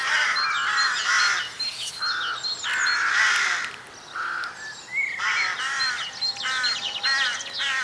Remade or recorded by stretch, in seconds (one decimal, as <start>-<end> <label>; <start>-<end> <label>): 0.0-7.8 recorded